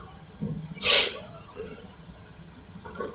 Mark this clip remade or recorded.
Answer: remade